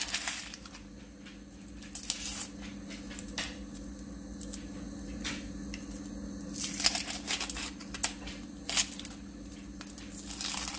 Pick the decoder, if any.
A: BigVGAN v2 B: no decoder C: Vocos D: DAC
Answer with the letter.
B